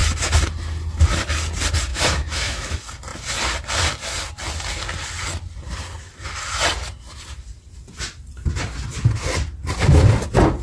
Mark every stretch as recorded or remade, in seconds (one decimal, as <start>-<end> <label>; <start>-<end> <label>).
0.0-1.9 recorded; 1.9-2.7 remade; 2.7-10.6 recorded